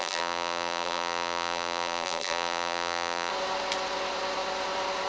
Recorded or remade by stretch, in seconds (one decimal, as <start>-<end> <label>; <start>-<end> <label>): 0.0-3.3 remade; 3.3-5.1 recorded